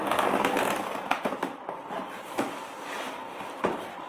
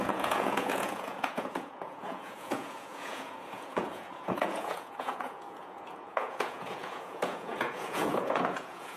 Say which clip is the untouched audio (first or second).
first